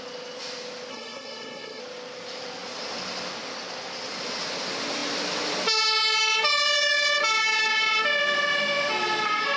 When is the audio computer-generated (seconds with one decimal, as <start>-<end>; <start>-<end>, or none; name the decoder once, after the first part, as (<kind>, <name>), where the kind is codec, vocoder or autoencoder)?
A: 0.9-1.8 (codec, SNAC)